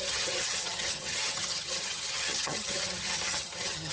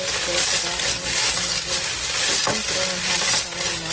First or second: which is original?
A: second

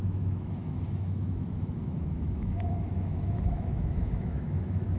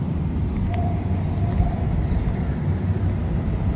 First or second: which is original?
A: second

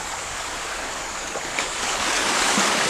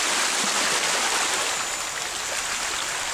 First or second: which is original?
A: second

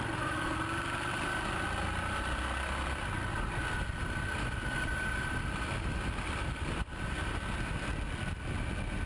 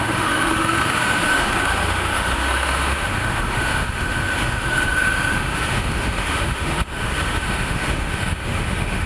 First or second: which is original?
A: first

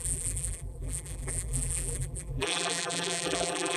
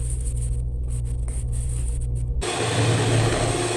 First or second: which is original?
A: second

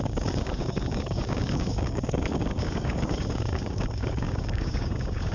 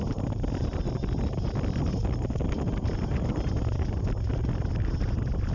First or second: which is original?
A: second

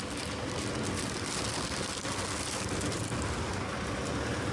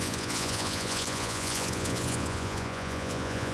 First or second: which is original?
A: first